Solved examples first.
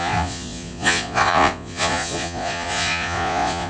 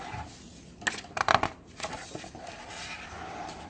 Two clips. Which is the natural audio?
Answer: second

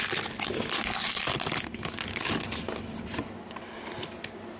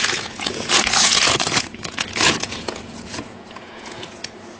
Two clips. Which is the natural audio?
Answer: first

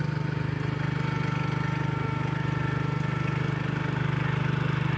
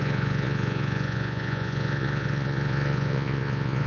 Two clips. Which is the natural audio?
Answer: first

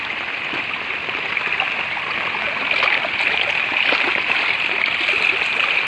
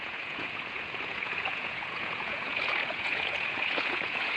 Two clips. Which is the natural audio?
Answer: first